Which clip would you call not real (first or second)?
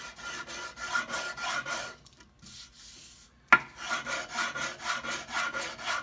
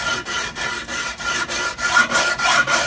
second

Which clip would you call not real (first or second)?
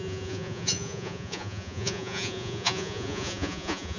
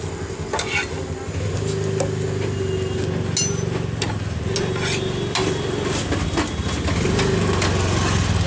first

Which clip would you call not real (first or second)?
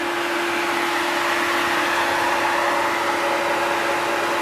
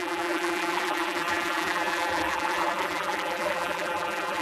second